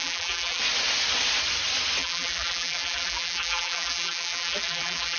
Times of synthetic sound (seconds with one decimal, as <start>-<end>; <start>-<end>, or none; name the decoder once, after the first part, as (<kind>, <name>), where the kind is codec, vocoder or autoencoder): 0.0-0.6 (vocoder, BigVGAN v2); 2.0-5.2